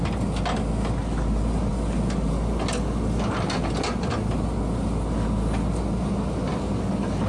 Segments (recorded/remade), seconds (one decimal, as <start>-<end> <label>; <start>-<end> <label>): 0.0-7.3 recorded